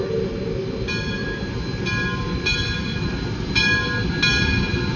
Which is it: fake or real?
real